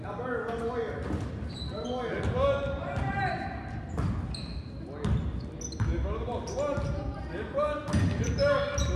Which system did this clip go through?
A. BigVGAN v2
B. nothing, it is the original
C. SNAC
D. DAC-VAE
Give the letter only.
B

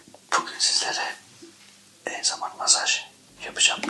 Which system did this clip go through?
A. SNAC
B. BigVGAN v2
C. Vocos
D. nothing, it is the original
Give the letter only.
B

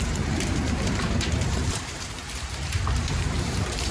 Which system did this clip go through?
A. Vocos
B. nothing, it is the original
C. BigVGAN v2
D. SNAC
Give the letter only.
C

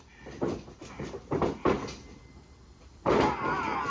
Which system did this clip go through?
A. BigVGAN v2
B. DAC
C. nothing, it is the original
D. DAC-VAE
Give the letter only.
C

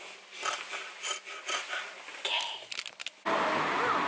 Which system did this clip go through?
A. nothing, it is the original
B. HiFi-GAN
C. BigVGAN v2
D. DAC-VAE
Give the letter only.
A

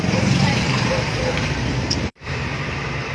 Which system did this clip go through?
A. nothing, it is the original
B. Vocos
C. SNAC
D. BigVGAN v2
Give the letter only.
D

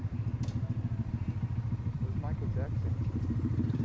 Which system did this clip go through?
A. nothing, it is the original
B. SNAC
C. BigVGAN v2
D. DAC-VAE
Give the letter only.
C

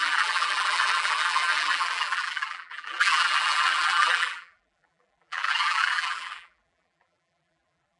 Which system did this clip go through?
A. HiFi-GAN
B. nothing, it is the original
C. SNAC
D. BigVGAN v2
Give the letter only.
D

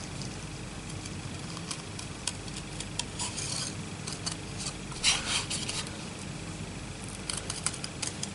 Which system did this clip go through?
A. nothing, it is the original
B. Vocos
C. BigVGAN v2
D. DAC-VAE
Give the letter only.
A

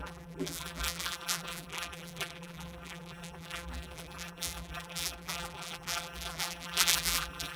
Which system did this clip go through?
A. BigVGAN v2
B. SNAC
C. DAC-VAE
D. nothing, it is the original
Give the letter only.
A